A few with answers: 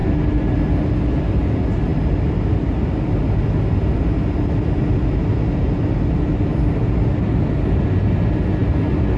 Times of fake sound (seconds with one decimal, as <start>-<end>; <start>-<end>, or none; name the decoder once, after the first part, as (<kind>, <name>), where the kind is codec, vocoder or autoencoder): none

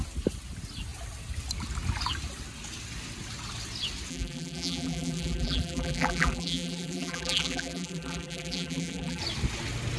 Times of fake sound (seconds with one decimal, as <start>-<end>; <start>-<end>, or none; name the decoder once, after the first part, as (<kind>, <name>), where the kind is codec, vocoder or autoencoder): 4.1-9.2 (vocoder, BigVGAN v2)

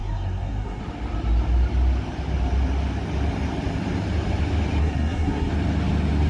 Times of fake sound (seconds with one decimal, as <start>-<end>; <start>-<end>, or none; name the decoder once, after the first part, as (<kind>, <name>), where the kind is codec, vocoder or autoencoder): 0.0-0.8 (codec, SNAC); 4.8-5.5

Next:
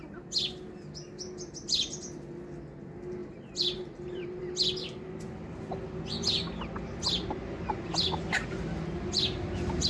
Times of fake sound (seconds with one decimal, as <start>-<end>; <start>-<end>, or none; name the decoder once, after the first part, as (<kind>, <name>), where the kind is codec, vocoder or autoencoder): 3.2-4.5 (vocoder, BigVGAN v2)

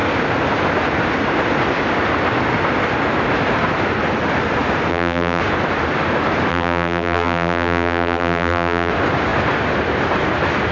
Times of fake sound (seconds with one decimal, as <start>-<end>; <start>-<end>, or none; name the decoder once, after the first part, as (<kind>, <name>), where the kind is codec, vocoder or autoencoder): 4.9-5.4 (vocoder, BigVGAN v2); 6.5-8.9

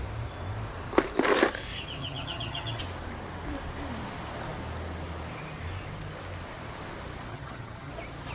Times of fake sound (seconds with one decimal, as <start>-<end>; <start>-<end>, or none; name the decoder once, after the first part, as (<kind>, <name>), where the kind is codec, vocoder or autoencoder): 2.0-2.8 (vocoder, HiFi-GAN); 7.3-7.9

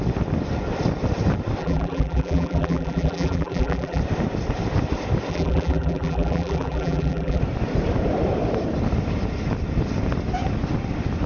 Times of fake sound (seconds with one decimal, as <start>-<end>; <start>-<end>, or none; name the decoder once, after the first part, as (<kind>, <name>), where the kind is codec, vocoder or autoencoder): 1.6-4.0 (vocoder, BigVGAN v2); 5.3-7.4

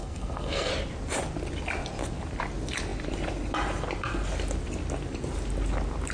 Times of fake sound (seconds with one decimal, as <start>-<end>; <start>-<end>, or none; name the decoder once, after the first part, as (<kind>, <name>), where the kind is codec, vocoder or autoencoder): 0.0-0.7 (codec, SNAC)